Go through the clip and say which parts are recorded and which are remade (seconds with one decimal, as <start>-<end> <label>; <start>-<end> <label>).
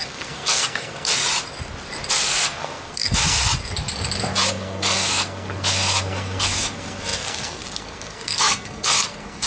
0.0-1.2 remade; 1.2-2.1 recorded; 2.1-3.5 remade; 3.5-4.5 recorded; 4.5-9.5 remade